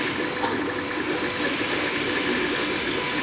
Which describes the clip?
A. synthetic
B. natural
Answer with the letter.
B